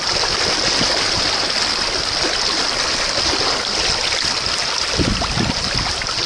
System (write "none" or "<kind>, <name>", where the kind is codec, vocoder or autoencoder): none